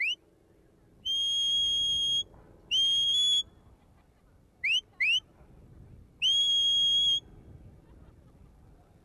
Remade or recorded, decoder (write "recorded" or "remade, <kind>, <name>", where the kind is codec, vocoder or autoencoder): recorded